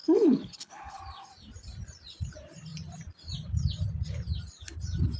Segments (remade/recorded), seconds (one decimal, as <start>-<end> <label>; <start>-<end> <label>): 0.0-1.0 remade; 1.0-5.2 recorded